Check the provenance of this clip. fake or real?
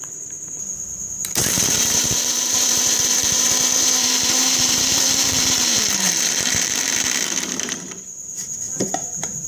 fake